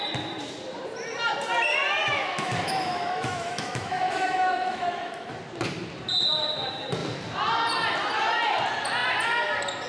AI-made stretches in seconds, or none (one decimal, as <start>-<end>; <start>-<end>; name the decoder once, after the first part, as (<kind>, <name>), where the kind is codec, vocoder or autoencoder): 2.0-5.3 (autoencoder, DAC-VAE)